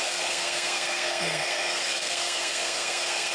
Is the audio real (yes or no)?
no